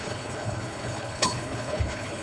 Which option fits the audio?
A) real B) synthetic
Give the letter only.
B